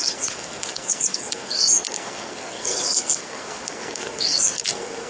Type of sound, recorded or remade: remade